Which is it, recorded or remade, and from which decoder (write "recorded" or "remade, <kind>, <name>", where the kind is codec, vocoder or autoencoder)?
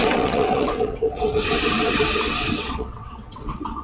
remade, vocoder, WaveNeXt